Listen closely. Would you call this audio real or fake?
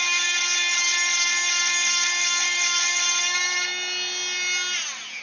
real